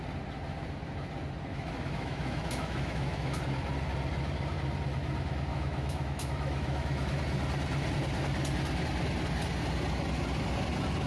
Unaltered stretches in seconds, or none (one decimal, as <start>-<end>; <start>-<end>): 0.0-1.5; 3.4-5.5; 7.2-11.1